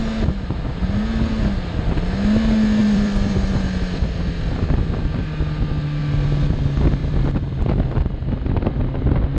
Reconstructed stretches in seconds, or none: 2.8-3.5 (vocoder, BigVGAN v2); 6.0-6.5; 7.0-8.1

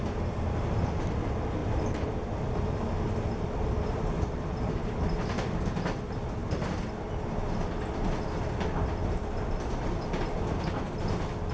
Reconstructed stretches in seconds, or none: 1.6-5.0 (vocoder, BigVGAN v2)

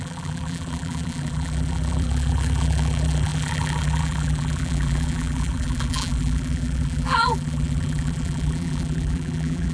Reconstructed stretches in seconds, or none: 0.0-9.7 (vocoder, BigVGAN v2)